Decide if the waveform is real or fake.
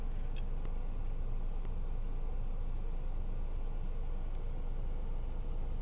real